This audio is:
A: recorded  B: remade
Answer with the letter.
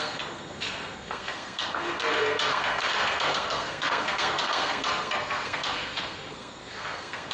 B